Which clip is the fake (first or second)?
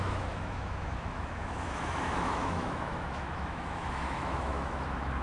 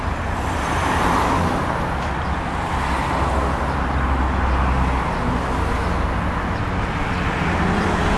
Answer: first